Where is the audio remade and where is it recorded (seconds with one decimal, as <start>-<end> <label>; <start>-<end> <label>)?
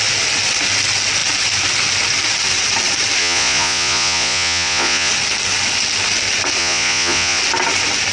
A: 0.0-3.2 recorded; 3.2-5.1 remade; 5.1-6.6 recorded; 6.6-7.4 remade; 7.4-8.1 recorded